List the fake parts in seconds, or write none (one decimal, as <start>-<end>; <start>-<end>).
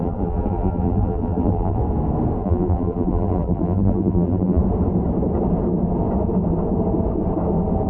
0.0-1.8; 2.4-4.6